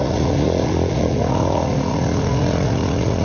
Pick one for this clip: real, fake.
fake